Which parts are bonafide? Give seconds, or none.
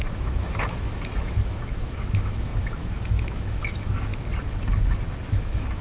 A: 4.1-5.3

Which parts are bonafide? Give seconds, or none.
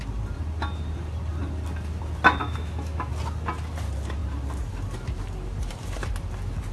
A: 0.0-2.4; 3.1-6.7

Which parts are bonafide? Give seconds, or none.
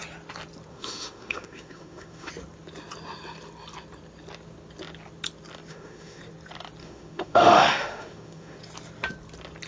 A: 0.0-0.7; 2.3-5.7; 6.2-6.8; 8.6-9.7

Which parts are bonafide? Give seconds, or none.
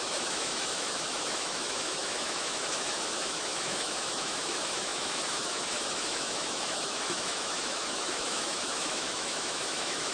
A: none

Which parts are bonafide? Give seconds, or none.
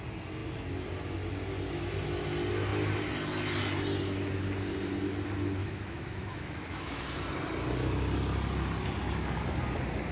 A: 0.0-5.6; 7.0-10.1